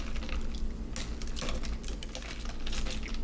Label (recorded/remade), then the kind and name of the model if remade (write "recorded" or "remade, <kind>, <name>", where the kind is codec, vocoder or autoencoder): recorded